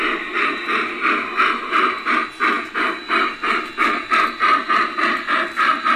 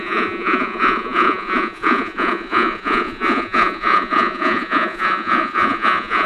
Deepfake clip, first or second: second